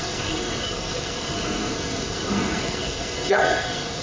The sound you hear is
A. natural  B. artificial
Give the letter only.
B